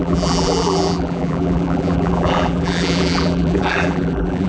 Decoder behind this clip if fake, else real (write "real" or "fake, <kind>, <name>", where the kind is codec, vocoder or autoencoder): fake, vocoder, BigVGAN v2